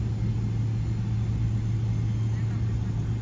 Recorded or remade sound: recorded